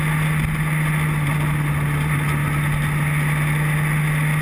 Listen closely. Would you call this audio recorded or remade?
recorded